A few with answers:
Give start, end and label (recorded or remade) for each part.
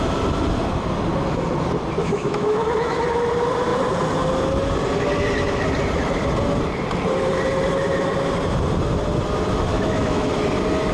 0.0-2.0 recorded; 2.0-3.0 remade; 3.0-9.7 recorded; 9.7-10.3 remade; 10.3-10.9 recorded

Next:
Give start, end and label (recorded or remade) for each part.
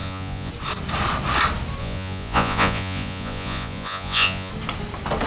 0.0-0.5 remade; 0.5-1.8 recorded; 1.8-4.5 remade; 4.5-5.3 recorded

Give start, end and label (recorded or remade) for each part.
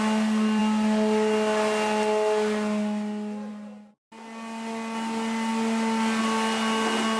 0.0-7.2 recorded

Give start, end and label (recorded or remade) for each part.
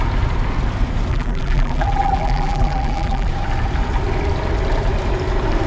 0.0-1.1 recorded; 1.1-3.3 remade; 3.3-5.7 recorded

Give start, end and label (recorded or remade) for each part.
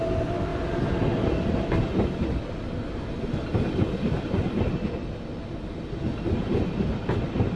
0.0-7.6 recorded